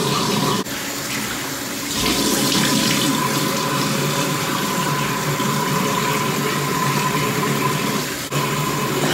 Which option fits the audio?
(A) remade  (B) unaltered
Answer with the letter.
B